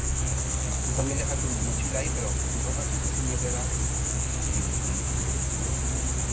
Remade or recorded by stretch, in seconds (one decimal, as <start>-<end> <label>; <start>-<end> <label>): 0.0-1.2 remade; 1.2-4.1 recorded; 4.1-4.6 remade; 4.6-6.3 recorded